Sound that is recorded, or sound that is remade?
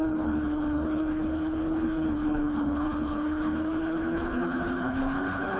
remade